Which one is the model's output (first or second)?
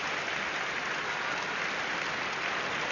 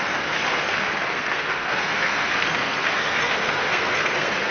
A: second